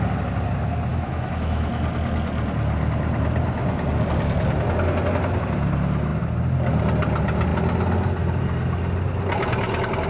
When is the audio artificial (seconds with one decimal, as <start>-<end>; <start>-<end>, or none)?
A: 0.9-1.7